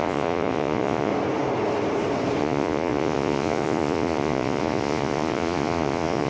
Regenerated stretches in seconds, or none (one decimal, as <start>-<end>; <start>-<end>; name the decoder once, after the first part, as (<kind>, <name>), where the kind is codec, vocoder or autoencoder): 0.0-1.1 (vocoder, Vocos); 2.4-6.3